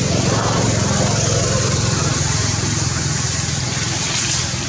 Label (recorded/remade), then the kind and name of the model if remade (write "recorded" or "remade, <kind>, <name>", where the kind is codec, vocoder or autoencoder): recorded